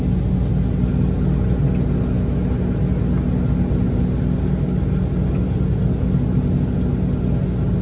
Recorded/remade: recorded